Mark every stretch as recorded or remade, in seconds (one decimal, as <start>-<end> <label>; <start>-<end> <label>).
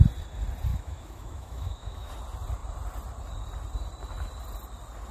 0.0-0.7 recorded; 0.7-2.1 remade; 2.1-5.1 recorded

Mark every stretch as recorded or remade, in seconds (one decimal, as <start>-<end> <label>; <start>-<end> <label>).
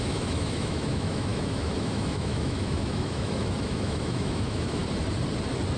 0.0-4.8 remade; 4.8-5.8 recorded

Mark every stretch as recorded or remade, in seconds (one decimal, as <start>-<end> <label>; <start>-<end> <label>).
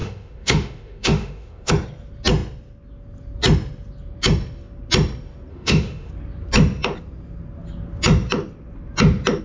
0.0-1.7 remade; 1.7-5.5 recorded; 5.5-6.1 remade; 6.1-9.4 recorded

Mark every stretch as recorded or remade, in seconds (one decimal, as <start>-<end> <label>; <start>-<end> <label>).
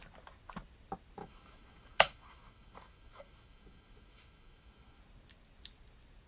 0.0-1.2 recorded; 1.2-5.0 remade; 5.0-6.3 recorded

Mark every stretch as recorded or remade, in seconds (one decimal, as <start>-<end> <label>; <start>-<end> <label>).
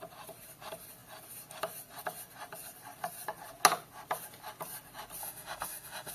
0.0-5.2 recorded; 5.2-6.1 remade